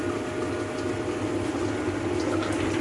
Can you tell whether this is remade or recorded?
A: recorded